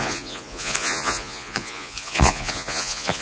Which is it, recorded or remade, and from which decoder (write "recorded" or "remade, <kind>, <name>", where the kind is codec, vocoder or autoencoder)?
remade, vocoder, Vocos